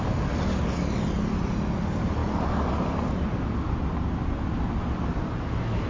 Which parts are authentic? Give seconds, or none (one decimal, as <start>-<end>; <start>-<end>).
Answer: 0.0-5.9